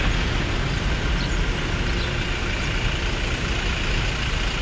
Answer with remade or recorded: recorded